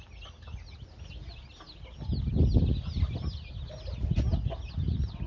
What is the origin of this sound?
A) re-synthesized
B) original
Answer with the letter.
B